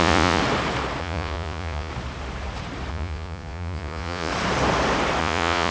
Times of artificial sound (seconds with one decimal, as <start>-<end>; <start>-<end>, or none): 0.0-0.4; 1.0-1.9; 2.9-4.3; 5.2-5.7